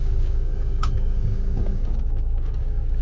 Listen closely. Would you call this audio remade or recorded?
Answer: remade